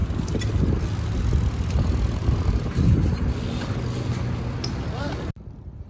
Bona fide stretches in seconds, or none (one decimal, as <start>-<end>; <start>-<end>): 0.0-5.9